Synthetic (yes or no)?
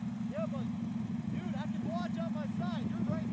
no